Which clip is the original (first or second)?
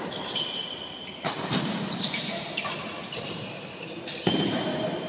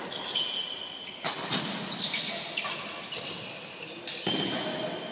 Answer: second